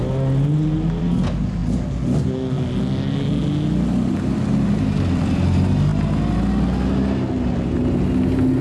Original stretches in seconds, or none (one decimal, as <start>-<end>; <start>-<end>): 0.0-8.6